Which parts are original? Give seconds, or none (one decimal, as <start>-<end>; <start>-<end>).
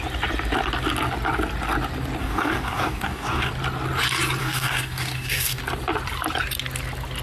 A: 0.0-2.2; 3.5-4.4; 5.6-7.2